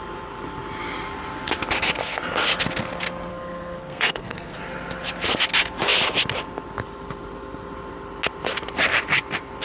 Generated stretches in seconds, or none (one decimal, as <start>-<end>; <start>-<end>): 3.3-4.6